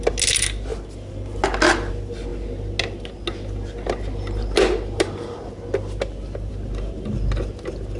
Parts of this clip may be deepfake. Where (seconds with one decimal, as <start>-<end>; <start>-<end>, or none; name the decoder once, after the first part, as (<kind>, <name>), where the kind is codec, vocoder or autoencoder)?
none